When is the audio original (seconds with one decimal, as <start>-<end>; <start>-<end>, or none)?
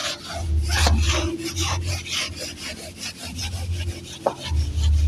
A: 0.0-5.1